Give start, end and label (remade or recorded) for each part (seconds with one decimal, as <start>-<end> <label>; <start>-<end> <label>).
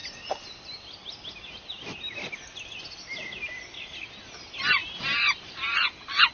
0.0-4.8 recorded; 4.8-6.3 remade